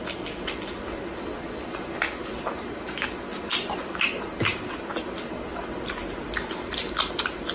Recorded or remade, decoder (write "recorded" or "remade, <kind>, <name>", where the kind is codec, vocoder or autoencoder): recorded